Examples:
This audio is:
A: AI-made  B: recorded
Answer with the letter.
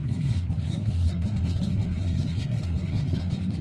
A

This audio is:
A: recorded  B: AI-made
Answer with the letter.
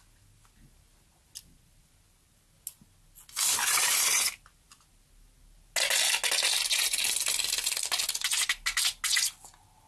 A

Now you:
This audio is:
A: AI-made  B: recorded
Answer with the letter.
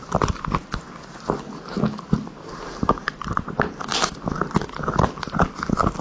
B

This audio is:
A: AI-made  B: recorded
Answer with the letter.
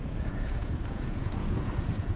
A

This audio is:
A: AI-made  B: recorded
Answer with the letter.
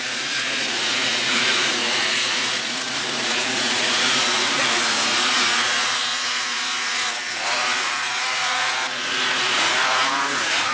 A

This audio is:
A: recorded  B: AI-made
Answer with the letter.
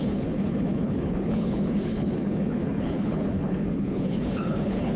B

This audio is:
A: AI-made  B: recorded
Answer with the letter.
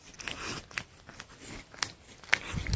B